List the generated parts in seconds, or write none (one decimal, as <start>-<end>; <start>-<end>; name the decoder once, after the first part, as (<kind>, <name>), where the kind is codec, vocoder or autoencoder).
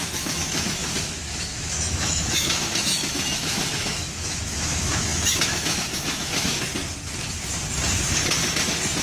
0.0-6.7 (autoencoder, DAC-VAE)